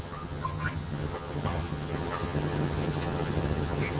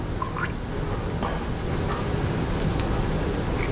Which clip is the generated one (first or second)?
first